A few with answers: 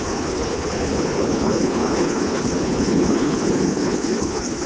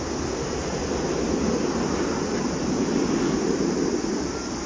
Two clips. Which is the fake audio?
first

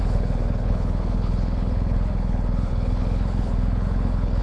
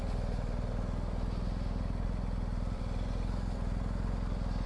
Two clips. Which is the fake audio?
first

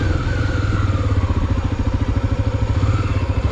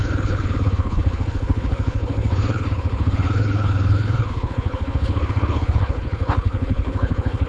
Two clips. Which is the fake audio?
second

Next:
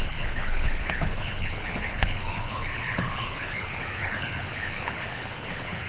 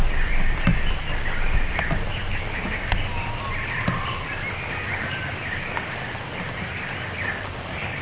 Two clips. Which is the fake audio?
first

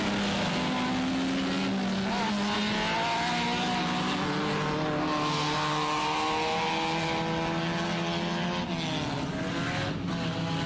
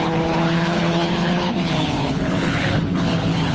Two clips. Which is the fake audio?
second